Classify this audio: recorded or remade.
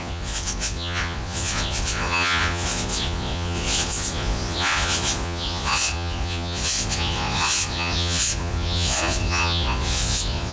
remade